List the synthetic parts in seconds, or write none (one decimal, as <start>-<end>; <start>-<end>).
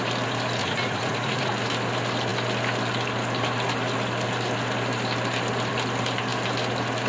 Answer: 0.6-1.5